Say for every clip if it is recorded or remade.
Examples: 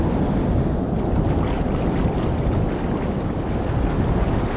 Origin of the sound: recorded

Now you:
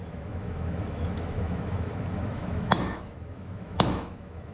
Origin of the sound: remade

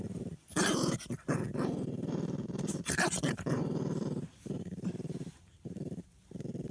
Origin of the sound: remade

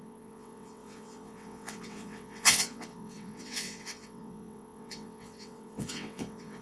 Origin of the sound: remade